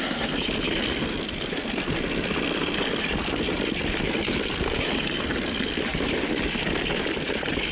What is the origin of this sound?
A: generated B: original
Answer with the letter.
B